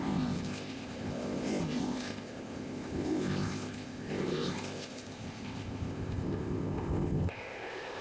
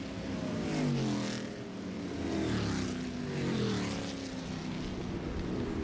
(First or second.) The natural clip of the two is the second